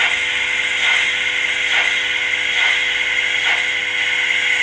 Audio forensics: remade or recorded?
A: recorded